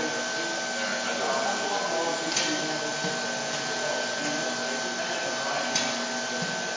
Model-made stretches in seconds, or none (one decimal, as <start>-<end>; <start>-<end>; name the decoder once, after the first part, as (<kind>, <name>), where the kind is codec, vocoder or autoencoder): 3.4-4.2 (vocoder, Vocos)